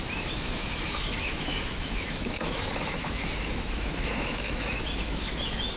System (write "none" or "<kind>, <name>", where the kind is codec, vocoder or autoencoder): autoencoder, DAC-VAE